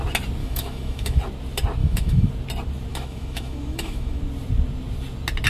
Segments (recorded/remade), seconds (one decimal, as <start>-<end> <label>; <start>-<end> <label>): 0.0-0.4 recorded; 0.4-1.2 remade; 1.2-1.8 recorded; 1.8-2.3 remade; 2.3-2.9 recorded; 2.9-4.2 remade; 4.2-5.5 recorded